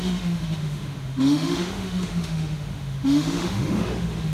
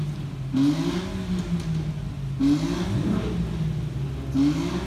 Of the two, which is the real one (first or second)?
second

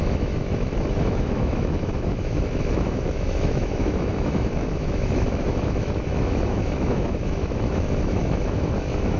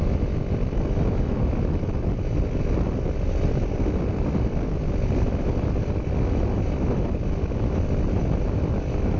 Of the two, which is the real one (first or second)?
second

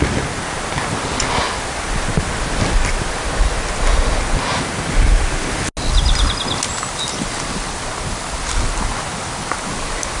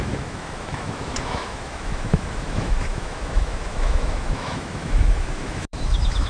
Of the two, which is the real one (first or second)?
first